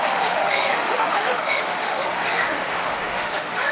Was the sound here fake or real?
fake